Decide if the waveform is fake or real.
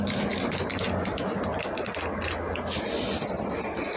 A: real